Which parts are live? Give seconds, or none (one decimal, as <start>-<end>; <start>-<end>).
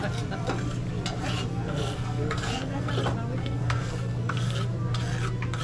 0.0-1.5; 2.9-3.4; 4.6-5.6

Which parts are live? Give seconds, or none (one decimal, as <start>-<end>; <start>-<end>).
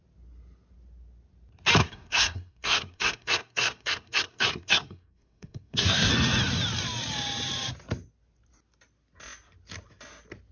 0.0-1.8; 6.1-10.5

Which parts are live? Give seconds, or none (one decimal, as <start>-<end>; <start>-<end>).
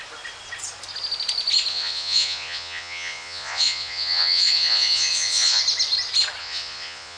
0.0-1.7; 5.6-6.4